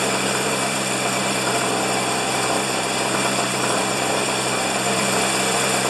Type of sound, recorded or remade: remade